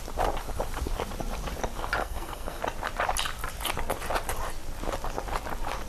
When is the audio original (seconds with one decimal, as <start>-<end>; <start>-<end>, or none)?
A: 0.0-2.0; 2.6-5.9

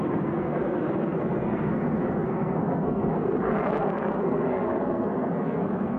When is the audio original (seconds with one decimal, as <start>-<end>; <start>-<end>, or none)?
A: none

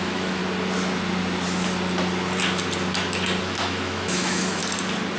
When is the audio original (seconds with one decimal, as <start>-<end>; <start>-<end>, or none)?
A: 0.4-3.4; 4.6-5.2

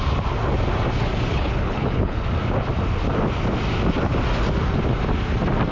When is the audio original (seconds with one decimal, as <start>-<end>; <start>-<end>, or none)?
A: 0.0-1.3; 2.2-5.7

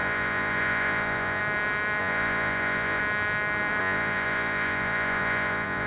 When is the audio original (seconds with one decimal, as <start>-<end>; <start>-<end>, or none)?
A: 1.4-2.0; 3.0-3.8

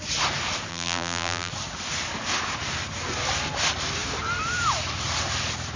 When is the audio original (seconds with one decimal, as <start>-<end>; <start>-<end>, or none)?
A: 0.0-0.7; 1.5-5.8

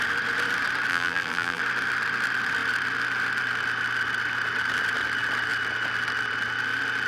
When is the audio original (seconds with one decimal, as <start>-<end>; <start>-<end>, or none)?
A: 0.0-0.9; 1.6-7.1

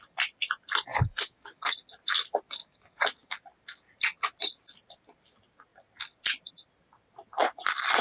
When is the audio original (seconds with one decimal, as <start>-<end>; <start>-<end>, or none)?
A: 0.0-0.9; 1.7-2.6; 3.3-8.0